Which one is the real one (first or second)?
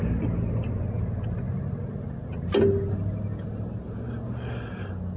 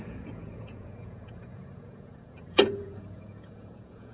first